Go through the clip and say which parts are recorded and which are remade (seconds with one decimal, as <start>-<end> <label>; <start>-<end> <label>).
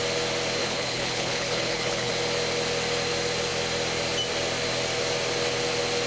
0.0-0.6 recorded; 0.6-2.1 remade; 2.1-6.1 recorded